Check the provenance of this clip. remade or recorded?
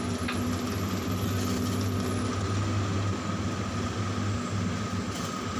recorded